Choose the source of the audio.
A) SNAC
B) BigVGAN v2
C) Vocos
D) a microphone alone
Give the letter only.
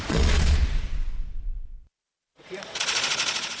C